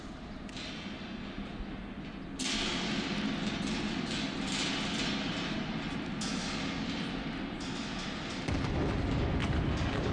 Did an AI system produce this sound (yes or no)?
no